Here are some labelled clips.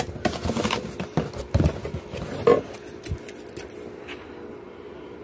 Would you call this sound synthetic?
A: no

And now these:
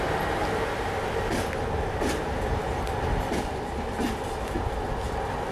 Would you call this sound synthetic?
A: no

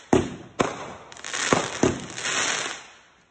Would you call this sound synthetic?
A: no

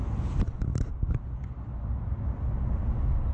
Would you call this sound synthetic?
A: no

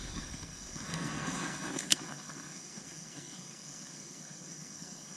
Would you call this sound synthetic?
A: yes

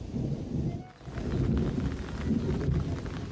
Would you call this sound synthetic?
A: no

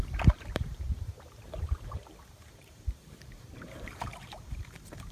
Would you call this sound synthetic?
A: yes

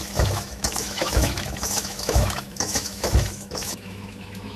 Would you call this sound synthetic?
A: yes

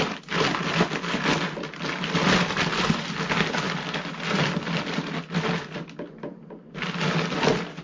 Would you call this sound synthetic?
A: no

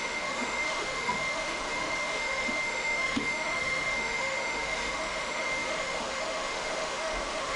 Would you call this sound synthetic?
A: yes